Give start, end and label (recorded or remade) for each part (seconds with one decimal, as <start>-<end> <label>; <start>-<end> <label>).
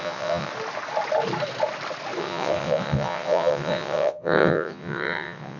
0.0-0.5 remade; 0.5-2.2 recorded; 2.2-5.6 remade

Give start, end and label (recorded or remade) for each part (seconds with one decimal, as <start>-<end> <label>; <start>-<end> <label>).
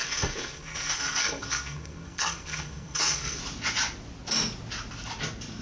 0.0-3.4 remade; 3.4-5.6 recorded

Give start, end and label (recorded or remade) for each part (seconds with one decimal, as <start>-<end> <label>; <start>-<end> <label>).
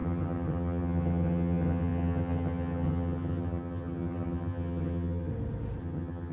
0.0-5.3 remade; 5.3-5.8 recorded; 5.8-6.3 remade